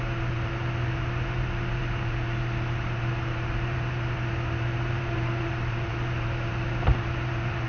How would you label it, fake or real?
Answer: fake